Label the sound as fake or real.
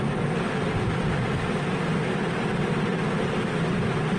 real